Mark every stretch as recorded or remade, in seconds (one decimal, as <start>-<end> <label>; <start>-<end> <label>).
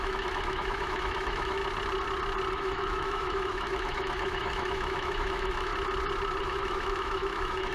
0.0-1.6 remade; 1.6-2.5 recorded; 2.5-5.7 remade; 5.7-6.4 recorded; 6.4-7.7 remade